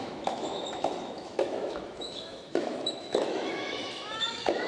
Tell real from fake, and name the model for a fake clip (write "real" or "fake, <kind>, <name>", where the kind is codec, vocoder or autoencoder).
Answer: fake, autoencoder, DAC-VAE